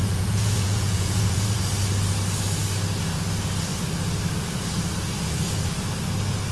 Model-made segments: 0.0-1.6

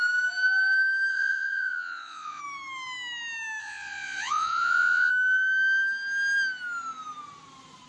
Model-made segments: 1.1-2.4; 3.6-5.1

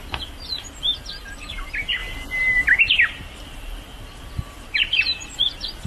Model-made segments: none

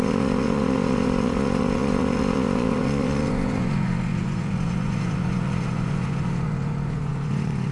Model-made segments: 0.0-7.7

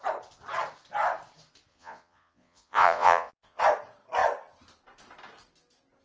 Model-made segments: 1.7-3.6